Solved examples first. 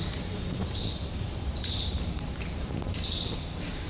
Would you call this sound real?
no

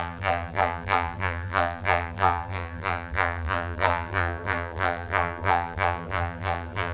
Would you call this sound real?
no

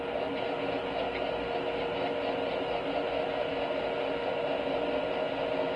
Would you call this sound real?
yes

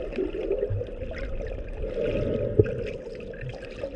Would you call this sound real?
yes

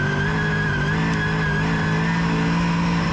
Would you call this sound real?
yes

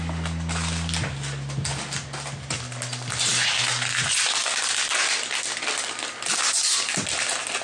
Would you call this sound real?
yes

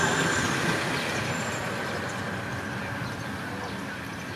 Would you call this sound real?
yes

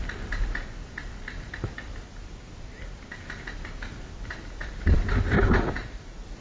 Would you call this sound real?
no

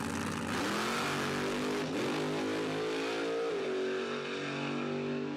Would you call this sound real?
yes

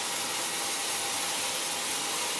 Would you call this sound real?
yes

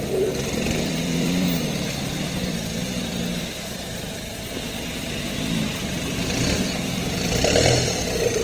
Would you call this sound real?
no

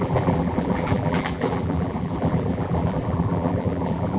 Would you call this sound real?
no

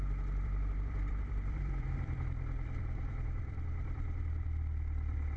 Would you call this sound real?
no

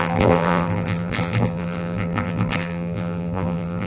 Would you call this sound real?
no